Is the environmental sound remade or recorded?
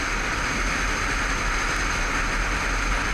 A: recorded